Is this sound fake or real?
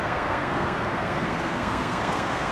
fake